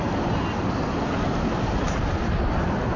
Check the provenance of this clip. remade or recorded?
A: recorded